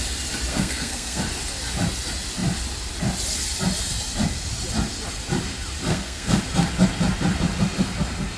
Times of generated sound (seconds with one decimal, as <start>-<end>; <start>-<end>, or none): 0.5-1.2; 5.9-6.4